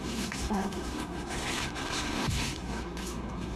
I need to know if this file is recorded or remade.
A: remade